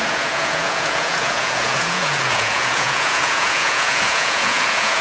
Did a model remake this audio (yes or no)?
yes